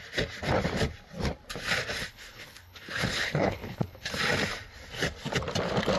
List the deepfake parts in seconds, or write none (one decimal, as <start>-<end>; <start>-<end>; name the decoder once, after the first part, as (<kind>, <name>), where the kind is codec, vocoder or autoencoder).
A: 2.1-4.1 (codec, HILCodec)